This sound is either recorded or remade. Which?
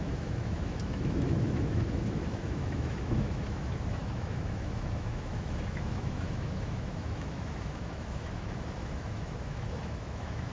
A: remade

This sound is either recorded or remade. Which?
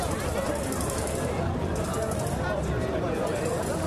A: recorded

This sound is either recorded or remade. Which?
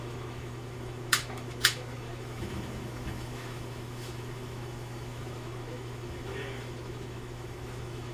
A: remade